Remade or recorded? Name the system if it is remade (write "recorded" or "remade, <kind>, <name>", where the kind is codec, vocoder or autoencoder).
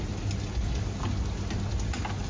recorded